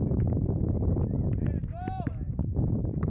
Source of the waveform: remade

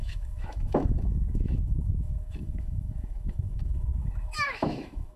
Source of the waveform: remade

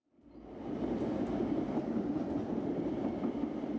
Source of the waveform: recorded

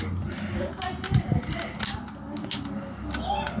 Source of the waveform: recorded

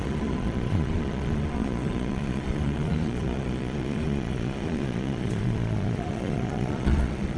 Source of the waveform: remade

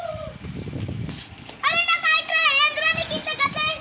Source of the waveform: recorded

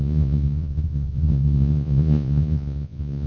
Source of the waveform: remade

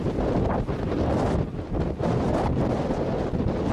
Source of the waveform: recorded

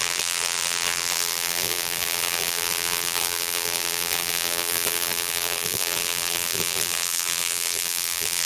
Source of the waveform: remade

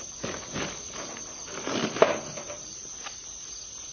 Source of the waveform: recorded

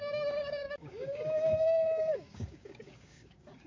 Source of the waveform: remade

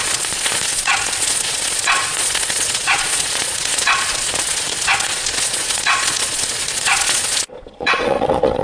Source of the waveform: remade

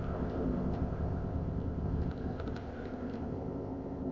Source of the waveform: remade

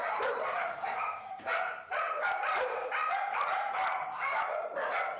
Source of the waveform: remade